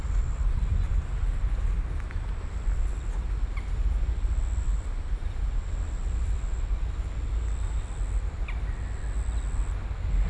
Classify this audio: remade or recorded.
recorded